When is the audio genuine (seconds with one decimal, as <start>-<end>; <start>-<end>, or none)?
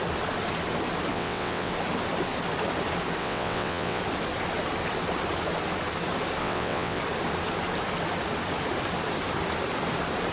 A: 0.0-1.1; 1.7-3.2; 4.0-6.4; 7.0-10.3